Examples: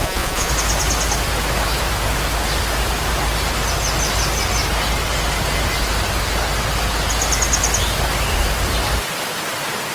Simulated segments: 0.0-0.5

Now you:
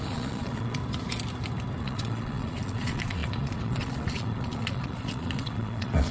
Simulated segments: 0.0-0.8; 1.8-6.1

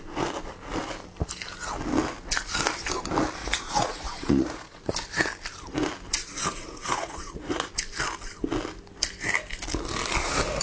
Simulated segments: 3.4-4.9; 6.2-7.7

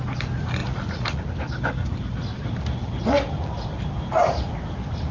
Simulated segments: 0.6-1.2

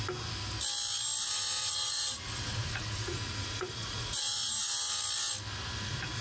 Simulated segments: 1.3-5.0

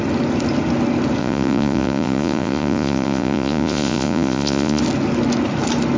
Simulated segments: 1.2-4.8

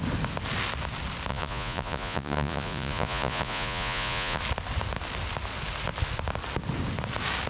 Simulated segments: 1.3-4.4

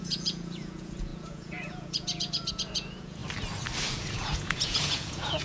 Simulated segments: 0.0-3.2; 3.9-5.4